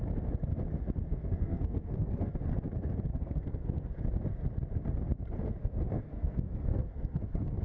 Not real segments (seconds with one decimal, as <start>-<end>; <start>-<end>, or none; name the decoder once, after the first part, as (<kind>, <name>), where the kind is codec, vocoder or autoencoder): 1.1-2.3 (codec, SNAC); 3.1-3.9; 5.6-7.6